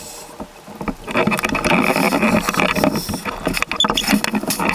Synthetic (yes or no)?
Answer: no